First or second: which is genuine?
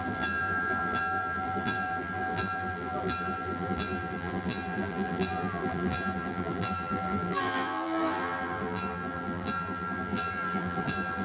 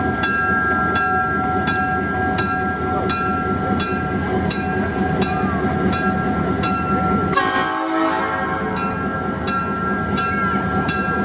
second